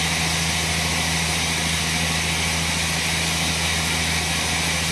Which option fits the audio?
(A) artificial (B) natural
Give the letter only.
B